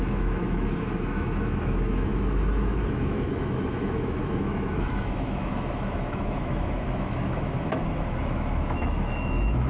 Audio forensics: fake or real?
fake